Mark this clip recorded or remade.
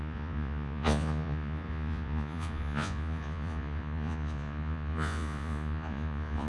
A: remade